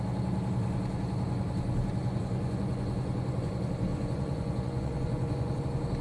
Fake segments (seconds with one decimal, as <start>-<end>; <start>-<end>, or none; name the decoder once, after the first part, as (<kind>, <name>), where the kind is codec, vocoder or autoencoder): 2.0-3.5 (vocoder, Vocos); 3.9-5.6